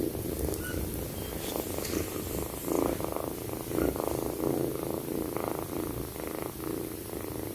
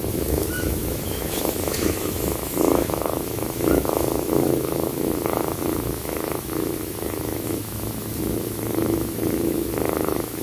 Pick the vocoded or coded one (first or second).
second